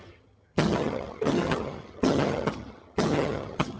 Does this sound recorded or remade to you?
remade